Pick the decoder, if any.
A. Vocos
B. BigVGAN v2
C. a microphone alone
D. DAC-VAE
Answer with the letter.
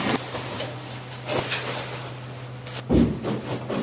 C